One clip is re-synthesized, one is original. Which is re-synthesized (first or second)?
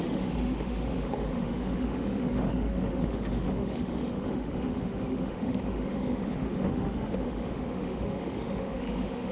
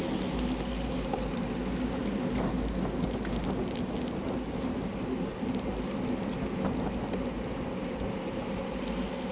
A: first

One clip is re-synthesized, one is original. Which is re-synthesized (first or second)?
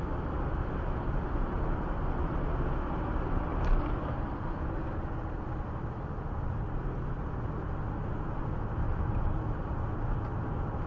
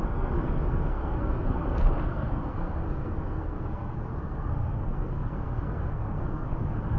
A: second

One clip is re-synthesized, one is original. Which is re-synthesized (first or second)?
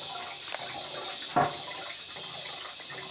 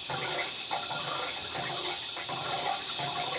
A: second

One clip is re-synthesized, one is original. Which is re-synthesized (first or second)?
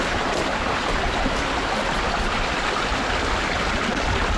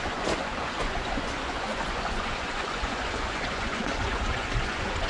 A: second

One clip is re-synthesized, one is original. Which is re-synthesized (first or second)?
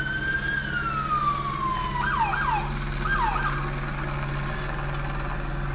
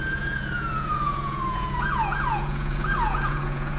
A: second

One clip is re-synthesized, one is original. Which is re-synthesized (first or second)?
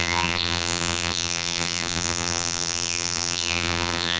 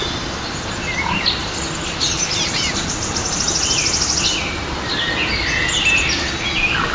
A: first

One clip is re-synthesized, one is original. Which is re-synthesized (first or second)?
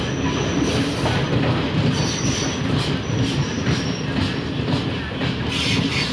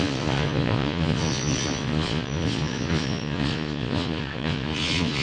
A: second